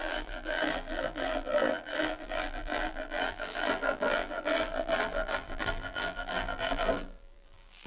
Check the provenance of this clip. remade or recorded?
remade